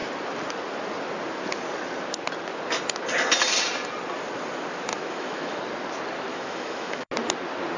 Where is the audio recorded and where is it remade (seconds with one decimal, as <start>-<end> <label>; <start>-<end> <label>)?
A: 0.0-4.9 recorded; 4.9-5.6 remade; 5.6-6.3 recorded; 6.3-7.1 remade; 7.1-7.8 recorded